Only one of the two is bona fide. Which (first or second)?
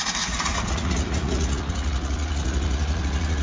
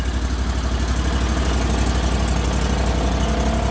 second